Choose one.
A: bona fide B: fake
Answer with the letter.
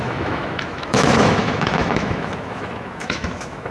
B